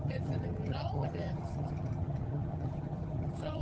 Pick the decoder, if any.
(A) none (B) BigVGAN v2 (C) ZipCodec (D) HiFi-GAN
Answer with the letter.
D